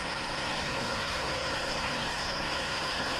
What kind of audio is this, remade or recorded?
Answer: remade